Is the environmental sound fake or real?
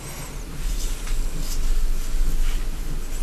real